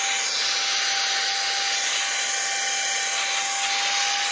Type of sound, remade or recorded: recorded